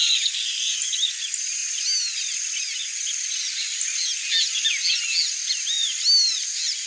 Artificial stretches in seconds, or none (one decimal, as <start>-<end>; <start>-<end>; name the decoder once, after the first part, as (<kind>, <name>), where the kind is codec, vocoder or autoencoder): none